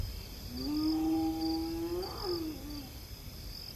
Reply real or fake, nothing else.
real